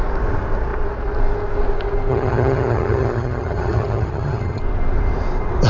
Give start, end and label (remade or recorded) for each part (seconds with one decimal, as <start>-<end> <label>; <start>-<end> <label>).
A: 0.0-2.1 recorded; 2.1-4.6 remade; 4.6-5.7 recorded